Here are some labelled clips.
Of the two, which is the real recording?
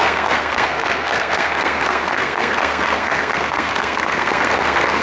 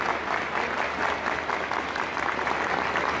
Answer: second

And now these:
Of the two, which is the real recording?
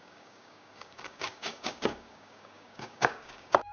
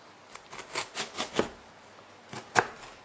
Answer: second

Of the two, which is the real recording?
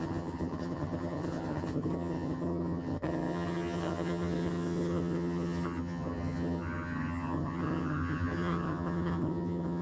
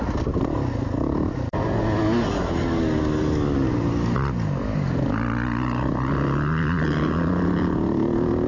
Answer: second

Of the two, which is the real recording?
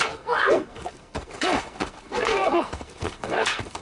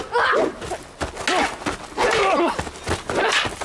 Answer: second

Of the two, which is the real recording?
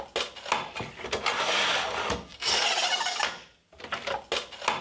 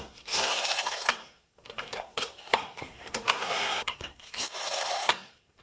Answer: first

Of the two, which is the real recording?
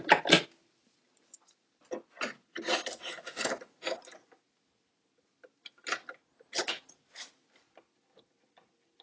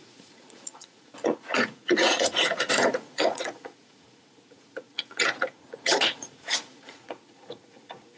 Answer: first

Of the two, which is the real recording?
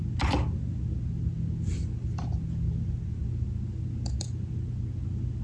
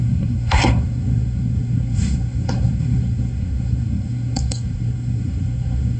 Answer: first